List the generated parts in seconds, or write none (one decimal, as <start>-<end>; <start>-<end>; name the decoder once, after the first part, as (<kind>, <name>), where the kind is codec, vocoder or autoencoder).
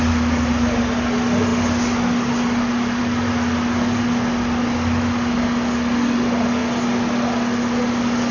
none